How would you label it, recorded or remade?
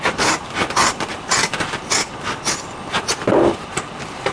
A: recorded